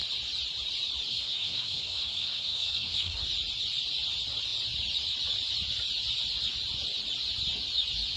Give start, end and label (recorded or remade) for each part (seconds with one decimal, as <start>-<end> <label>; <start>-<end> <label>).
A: 0.0-1.1 recorded; 1.1-3.3 remade; 3.3-8.2 recorded